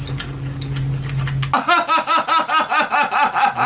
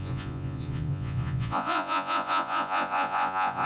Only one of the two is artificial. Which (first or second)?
second